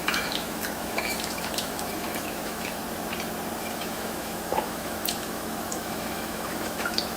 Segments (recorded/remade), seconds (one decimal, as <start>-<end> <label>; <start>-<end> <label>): 0.0-2.8 remade; 2.8-3.6 recorded; 3.6-7.2 remade